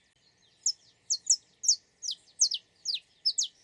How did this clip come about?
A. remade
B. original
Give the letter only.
B